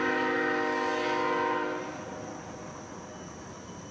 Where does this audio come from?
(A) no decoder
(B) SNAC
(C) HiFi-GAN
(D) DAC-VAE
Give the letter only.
A